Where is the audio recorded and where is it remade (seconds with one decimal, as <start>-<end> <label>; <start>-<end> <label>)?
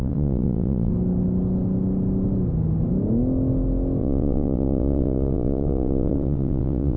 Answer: 0.0-0.9 remade; 0.9-4.0 recorded; 4.0-7.0 remade